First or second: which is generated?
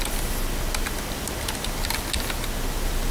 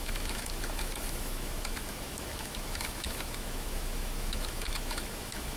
second